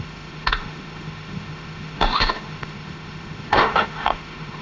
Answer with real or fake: fake